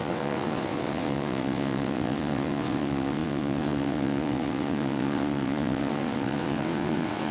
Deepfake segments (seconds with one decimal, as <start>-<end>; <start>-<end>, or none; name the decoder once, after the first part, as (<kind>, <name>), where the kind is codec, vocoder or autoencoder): 0.0-7.3 (vocoder, WaveNeXt)